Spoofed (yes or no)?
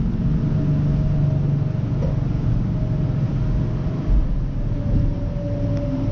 no